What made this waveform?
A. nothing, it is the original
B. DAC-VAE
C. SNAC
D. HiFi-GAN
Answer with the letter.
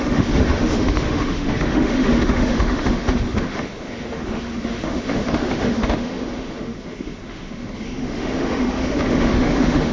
B